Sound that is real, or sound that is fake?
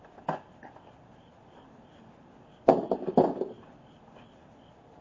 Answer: real